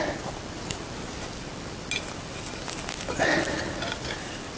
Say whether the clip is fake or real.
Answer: real